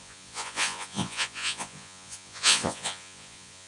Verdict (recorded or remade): remade